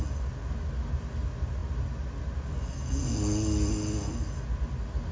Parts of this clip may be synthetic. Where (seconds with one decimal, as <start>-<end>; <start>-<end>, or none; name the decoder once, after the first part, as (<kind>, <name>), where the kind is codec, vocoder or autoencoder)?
none

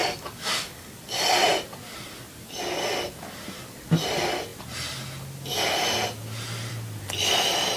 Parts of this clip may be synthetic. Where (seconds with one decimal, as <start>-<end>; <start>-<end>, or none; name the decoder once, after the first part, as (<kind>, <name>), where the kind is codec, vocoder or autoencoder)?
0.0-0.9 (codec, DAC)

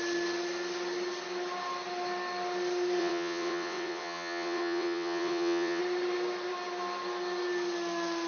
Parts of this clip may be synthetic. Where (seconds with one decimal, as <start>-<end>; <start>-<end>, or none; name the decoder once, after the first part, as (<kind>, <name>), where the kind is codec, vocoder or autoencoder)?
3.0-5.8 (vocoder, WaveNeXt)

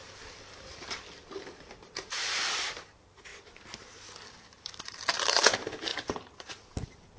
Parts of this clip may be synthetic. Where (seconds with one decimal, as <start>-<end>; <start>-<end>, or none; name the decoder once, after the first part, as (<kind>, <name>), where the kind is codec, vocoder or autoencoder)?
0.0-3.3 (vocoder, BigVGAN v2); 4.5-7.2

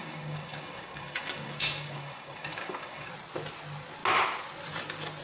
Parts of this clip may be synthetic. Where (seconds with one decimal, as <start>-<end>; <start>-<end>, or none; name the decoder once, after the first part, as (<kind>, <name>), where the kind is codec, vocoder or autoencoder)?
0.0-3.1 (codec, DAC)

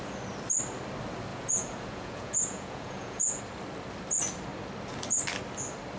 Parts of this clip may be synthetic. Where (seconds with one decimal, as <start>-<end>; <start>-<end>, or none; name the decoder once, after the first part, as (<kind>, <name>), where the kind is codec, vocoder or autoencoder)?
1.3-3.4 (vocoder, Vocos)

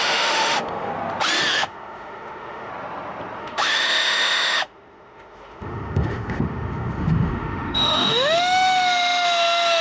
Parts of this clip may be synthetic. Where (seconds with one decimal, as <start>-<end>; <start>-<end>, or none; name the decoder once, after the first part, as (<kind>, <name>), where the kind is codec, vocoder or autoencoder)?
0.0-0.9 (autoencoder, DAC-VAE); 1.4-2.7; 3.4-9.8

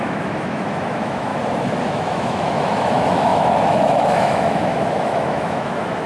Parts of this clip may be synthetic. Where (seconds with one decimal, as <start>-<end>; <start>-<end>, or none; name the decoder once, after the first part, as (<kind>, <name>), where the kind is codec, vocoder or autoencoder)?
0.0-1.3 (autoencoder, DAC-VAE); 1.8-6.1